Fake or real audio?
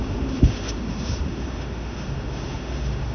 fake